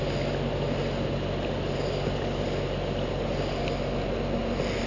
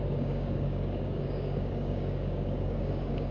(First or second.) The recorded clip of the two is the first